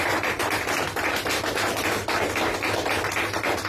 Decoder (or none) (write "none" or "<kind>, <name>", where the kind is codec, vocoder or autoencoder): none